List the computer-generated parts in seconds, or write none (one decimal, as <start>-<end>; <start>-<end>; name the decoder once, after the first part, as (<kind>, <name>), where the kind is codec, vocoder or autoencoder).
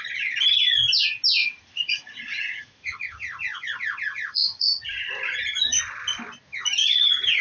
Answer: 1.4-5.8 (vocoder, Vocos); 6.8-7.4